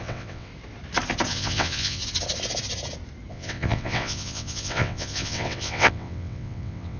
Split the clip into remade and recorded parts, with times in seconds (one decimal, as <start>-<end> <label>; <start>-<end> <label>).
0.0-0.5 remade; 0.5-1.3 recorded; 1.3-2.0 remade; 2.0-3.3 recorded; 3.3-7.0 remade